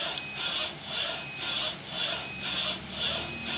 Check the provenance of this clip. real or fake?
real